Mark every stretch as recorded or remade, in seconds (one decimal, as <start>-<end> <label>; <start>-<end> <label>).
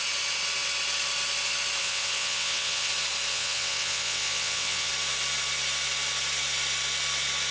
0.0-1.8 recorded; 1.8-2.9 remade; 2.9-3.3 recorded; 3.3-4.9 remade; 4.9-7.5 recorded